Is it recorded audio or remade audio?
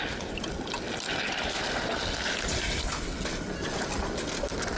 recorded